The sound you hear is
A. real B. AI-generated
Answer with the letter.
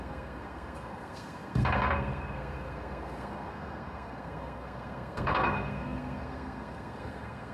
B